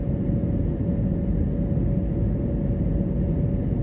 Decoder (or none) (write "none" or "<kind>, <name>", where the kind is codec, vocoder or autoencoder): none